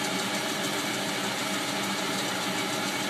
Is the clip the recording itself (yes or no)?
yes